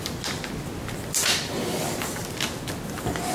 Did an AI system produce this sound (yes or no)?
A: no